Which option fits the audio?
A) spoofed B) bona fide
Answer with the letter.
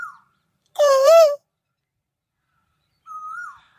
A